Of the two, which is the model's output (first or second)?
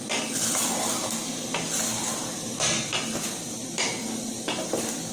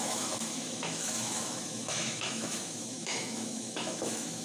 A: second